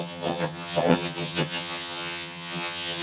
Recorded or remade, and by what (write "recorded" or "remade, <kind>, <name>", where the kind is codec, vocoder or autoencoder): remade, vocoder, HiFi-GAN